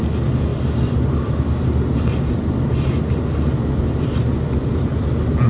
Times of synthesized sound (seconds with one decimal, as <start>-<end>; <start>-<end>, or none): none